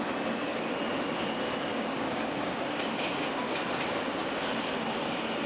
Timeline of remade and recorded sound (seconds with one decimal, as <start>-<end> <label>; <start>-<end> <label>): 0.0-1.7 recorded; 1.7-2.8 remade; 2.8-4.2 recorded; 4.2-4.7 remade; 4.7-5.5 recorded